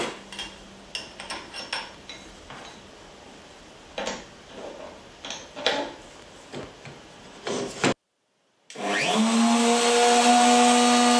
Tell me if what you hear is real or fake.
real